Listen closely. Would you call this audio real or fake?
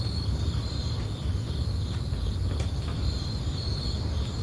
real